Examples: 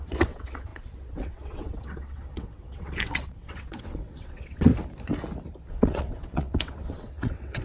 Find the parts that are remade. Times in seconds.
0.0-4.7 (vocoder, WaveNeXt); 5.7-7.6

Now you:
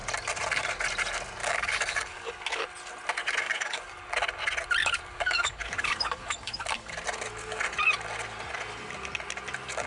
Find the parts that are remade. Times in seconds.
1.4-2.3 (codec, DAC); 3.4-4.0; 4.8-7.0

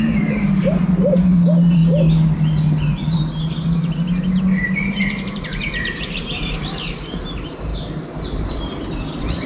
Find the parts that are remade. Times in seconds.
0.0-1.8 (vocoder, BigVGAN v2); 5.0-9.5